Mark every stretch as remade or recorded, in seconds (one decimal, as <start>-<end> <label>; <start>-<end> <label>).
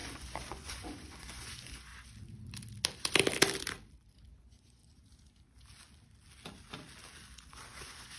0.0-1.9 remade; 1.9-4.3 recorded; 4.3-4.8 remade; 4.8-7.5 recorded; 7.5-8.2 remade